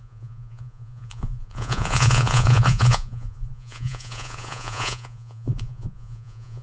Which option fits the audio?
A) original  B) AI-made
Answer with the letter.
B